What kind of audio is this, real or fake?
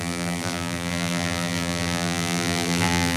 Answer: fake